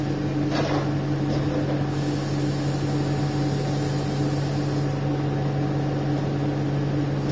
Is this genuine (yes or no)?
yes